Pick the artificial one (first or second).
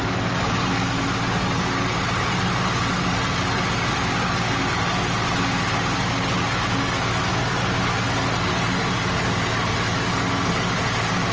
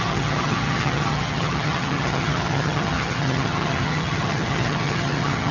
second